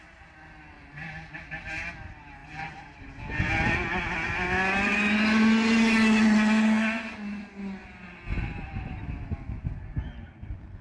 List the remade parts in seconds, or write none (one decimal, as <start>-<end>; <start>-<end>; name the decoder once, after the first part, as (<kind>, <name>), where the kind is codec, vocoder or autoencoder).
2.4-3.0 (vocoder, BigVGAN v2); 8.3-9.0